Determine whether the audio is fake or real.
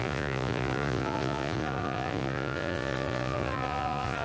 fake